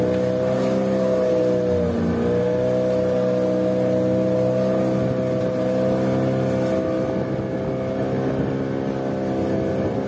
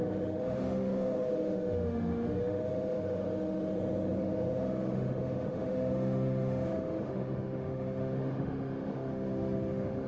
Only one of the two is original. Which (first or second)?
first